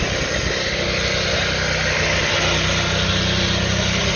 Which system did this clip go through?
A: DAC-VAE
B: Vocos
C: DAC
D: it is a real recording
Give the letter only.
D